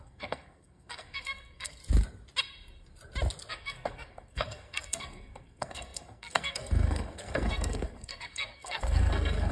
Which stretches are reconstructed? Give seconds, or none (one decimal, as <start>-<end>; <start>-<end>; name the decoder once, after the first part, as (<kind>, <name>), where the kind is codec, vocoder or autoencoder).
0.0-1.8 (codec, SNAC); 3.5-9.5